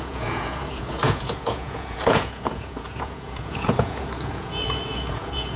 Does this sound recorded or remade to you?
remade